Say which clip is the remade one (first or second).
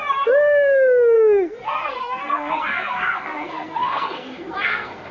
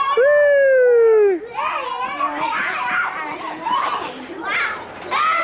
first